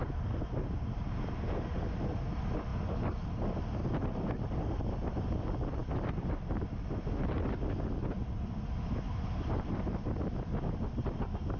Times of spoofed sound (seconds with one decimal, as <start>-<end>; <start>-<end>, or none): none